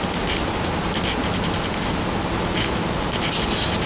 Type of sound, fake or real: real